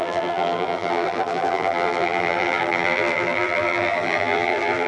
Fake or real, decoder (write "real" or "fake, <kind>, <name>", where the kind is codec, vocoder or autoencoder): fake, vocoder, BigVGAN v2